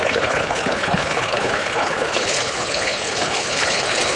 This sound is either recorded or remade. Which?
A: remade